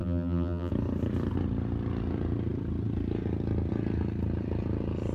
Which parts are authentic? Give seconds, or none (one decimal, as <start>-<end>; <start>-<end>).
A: 0.7-5.1